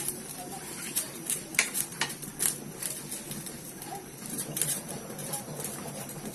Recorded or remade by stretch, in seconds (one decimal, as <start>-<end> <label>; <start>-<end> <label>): 0.0-2.3 remade; 2.3-3.7 recorded; 3.7-6.3 remade